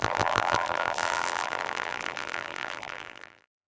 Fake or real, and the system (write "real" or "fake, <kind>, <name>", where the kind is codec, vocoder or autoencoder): fake, vocoder, BigVGAN v2